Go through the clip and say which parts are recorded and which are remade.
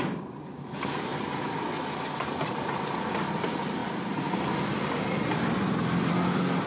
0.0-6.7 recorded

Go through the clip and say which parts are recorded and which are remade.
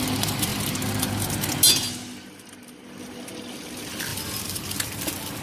0.0-4.1 recorded; 4.1-5.0 remade; 5.0-5.4 recorded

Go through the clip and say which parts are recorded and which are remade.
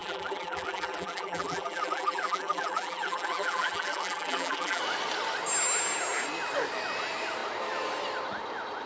0.0-4.8 remade; 4.8-8.9 recorded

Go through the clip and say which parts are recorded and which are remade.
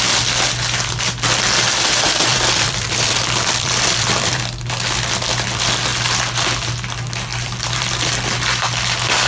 0.0-2.3 recorded; 2.3-4.4 remade; 4.4-7.3 recorded; 7.3-8.0 remade; 8.0-9.3 recorded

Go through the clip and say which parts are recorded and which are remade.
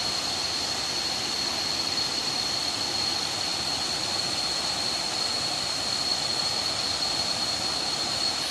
0.0-8.5 recorded